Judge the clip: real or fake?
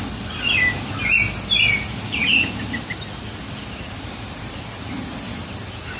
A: real